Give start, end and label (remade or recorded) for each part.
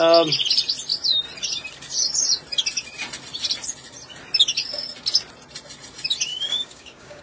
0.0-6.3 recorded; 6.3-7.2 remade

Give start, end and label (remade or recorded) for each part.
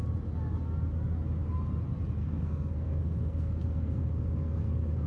0.0-2.2 recorded; 2.2-5.1 remade